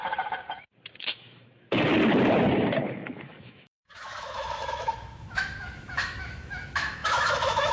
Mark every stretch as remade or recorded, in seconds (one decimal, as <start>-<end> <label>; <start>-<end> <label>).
0.0-1.0 recorded; 1.0-1.9 remade; 1.9-2.9 recorded; 2.9-7.7 remade

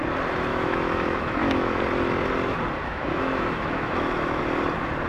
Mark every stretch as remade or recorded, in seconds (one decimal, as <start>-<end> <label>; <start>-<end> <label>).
0.0-0.5 recorded; 0.5-1.8 remade; 1.8-2.8 recorded; 2.8-4.4 remade; 4.4-5.1 recorded

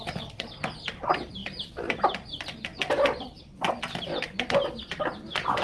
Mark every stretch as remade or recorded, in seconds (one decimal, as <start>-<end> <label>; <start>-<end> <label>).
0.0-5.6 recorded

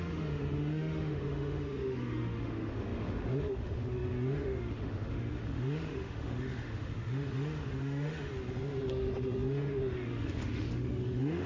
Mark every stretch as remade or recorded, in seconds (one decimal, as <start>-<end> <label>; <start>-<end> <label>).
0.0-8.3 remade; 8.3-8.9 recorded; 8.9-11.5 remade

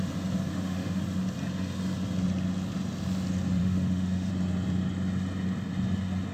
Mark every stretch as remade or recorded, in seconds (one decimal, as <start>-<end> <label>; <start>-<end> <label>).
0.0-0.5 recorded; 0.5-1.0 remade; 1.0-3.6 recorded; 3.6-4.3 remade; 4.3-6.3 recorded

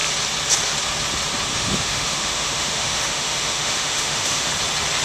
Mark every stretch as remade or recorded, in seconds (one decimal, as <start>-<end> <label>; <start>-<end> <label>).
0.0-1.5 recorded; 1.5-4.5 remade; 4.5-5.0 recorded

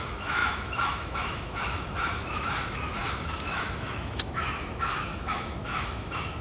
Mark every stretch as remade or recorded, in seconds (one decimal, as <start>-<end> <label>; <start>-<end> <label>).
0.0-6.4 remade

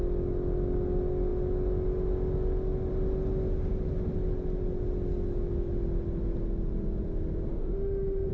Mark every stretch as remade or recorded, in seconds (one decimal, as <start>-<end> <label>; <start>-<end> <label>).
0.0-7.5 recorded; 7.5-8.3 remade